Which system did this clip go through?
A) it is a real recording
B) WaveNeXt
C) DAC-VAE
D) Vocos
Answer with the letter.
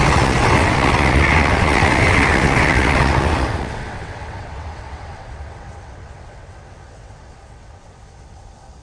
B